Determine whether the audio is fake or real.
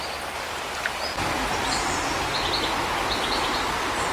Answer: real